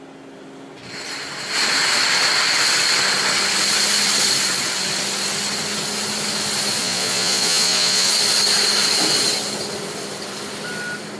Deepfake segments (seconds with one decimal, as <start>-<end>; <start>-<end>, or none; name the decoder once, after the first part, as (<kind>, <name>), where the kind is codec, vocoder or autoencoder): 6.8-8.1 (vocoder, Vocos)